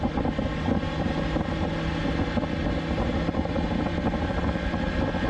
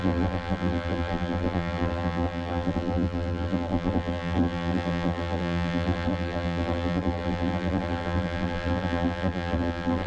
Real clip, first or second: first